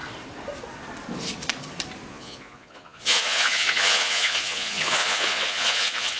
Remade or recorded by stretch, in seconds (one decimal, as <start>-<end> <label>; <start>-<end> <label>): 0.0-2.1 recorded; 2.1-6.2 remade